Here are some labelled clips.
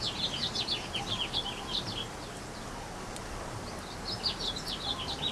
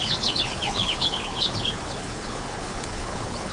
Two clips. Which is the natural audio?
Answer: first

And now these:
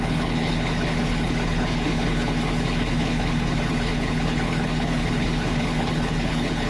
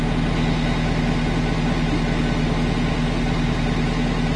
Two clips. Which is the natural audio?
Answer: second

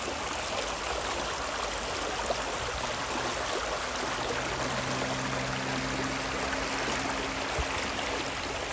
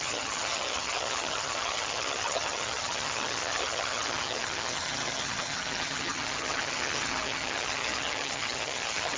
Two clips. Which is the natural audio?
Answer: first